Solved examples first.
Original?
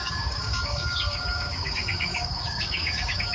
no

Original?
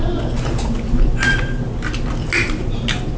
yes